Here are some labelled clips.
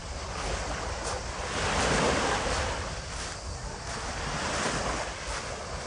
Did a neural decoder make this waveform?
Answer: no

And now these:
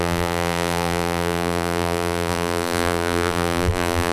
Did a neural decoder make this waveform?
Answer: yes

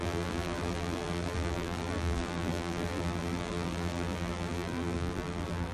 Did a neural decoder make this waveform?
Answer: yes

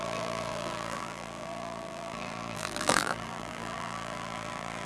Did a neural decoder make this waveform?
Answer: yes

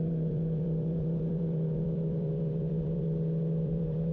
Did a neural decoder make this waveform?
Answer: yes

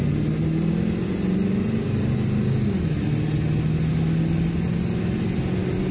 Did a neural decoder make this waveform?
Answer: no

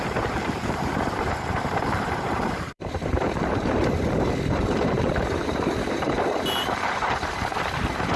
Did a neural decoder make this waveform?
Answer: yes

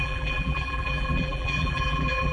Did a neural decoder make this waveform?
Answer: yes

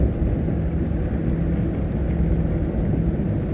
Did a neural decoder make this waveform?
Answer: no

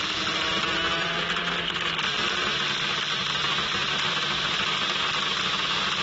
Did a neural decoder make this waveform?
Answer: no